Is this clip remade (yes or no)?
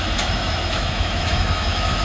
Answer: yes